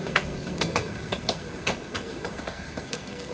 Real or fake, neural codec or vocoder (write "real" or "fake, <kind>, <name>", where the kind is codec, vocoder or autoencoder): fake, codec, SNAC